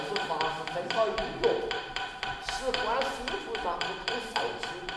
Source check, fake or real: real